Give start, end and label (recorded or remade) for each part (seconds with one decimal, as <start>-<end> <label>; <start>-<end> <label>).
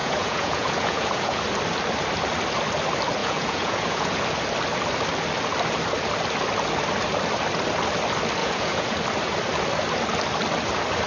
0.0-1.4 remade; 1.4-3.2 recorded; 3.2-4.2 remade; 4.2-8.4 recorded; 8.4-9.0 remade; 9.0-11.1 recorded